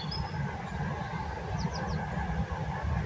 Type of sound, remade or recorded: recorded